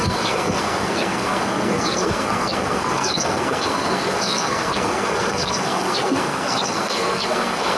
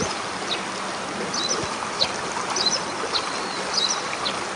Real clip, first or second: second